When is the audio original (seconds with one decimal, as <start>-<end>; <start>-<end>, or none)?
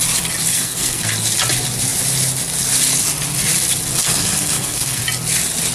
0.0-0.5; 1.1-4.0; 5.0-5.7